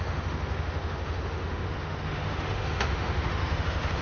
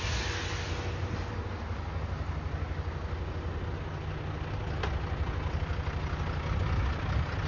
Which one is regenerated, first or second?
first